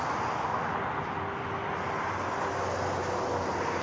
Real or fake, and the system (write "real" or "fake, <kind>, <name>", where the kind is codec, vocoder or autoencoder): real